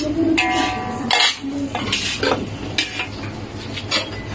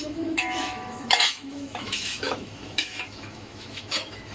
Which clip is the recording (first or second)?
first